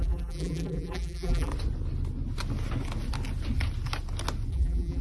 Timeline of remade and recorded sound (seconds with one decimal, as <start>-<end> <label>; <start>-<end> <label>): 0.0-1.5 remade; 1.5-4.5 recorded; 4.5-5.0 remade